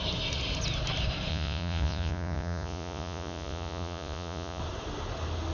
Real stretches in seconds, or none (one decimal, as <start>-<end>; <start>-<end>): 0.0-1.3; 4.6-5.5